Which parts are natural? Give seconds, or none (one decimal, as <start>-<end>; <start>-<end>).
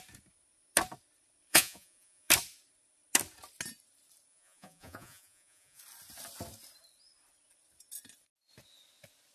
0.0-1.5; 2.3-4.3; 5.8-9.3